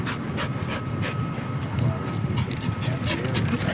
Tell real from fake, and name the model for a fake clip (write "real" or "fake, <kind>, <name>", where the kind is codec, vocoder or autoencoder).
real